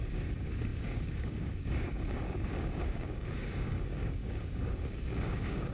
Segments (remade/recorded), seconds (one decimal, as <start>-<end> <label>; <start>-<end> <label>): 0.0-5.7 remade